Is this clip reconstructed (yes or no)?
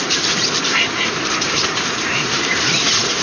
yes